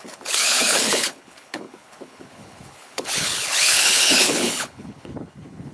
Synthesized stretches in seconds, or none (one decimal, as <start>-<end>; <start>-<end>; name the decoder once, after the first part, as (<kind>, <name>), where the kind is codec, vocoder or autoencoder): 0.0-5.7 (codec, HILCodec)